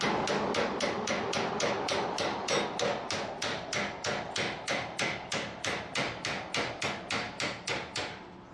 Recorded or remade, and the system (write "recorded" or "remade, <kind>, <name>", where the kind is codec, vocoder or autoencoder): recorded